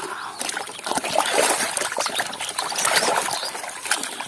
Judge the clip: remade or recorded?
recorded